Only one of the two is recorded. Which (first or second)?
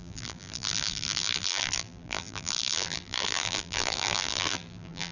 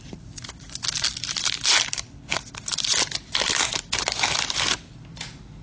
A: second